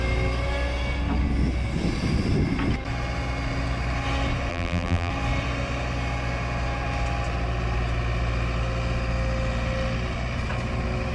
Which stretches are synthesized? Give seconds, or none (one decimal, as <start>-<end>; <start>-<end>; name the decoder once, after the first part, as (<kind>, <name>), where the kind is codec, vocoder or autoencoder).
4.5-5.1 (vocoder, BigVGAN v2)